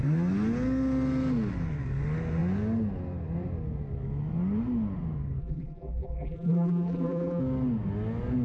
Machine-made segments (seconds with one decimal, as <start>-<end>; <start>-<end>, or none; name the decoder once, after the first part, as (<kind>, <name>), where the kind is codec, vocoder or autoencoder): 5.4-7.4 (vocoder, BigVGAN v2)